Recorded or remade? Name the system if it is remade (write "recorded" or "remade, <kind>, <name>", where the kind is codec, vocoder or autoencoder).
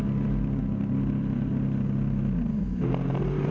recorded